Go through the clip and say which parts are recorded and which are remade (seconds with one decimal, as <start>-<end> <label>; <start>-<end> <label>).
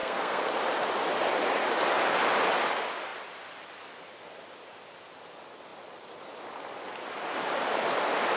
0.0-0.5 remade; 0.5-8.4 recorded